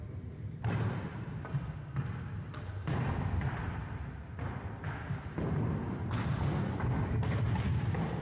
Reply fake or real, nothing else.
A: real